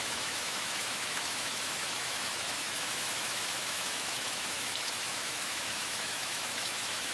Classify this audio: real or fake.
fake